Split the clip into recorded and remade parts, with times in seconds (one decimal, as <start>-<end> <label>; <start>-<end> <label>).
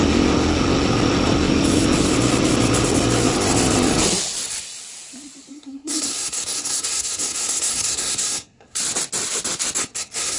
0.0-5.5 recorded; 5.5-8.8 remade; 8.8-9.8 recorded; 9.8-10.4 remade